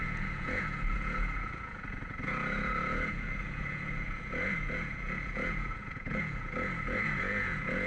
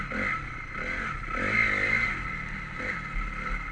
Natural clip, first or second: second